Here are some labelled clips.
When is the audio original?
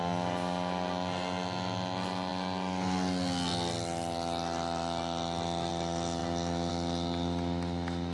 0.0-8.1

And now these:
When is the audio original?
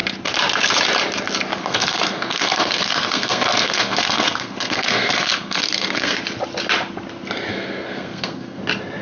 0.0-1.6; 6.2-7.5; 8.6-9.0